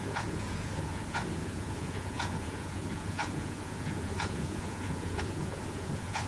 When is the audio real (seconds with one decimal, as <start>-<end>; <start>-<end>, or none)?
none